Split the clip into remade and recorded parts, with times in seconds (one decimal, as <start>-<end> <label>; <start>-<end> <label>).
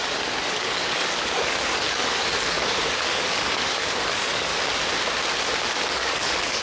0.0-4.5 remade; 4.5-5.7 recorded; 5.7-6.6 remade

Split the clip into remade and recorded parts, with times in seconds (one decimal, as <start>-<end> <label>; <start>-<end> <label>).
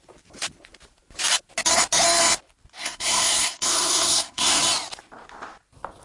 0.0-2.8 recorded; 2.8-4.6 remade; 4.6-6.0 recorded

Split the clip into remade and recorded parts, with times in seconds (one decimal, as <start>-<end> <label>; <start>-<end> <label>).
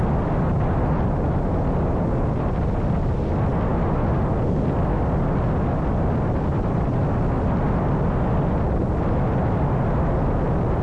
0.0-10.8 recorded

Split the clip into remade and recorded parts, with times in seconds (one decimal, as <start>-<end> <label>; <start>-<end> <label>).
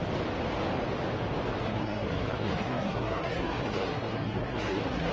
0.0-1.6 recorded; 1.6-5.1 remade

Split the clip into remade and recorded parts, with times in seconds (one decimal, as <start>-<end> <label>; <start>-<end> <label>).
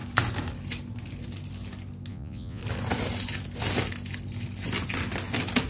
0.0-2.1 recorded; 2.1-2.6 remade; 2.6-5.7 recorded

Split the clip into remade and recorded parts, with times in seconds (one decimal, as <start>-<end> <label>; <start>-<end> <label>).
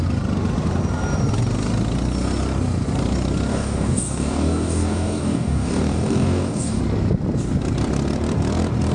0.0-3.5 recorded; 3.5-6.8 remade; 6.8-8.9 recorded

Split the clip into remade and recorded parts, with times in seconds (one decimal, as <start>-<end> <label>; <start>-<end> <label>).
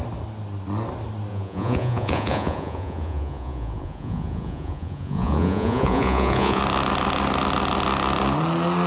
0.0-1.3 recorded; 1.3-6.6 remade; 6.6-8.9 recorded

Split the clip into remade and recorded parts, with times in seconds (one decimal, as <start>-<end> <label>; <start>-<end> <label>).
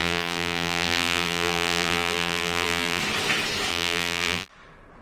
0.0-3.0 remade; 3.0-3.7 recorded; 3.7-4.5 remade; 4.5-5.0 recorded